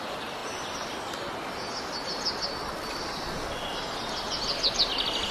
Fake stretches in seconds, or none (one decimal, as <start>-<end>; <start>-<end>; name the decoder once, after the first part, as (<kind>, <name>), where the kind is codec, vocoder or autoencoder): none